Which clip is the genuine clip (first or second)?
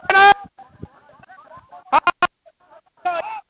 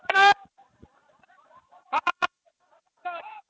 first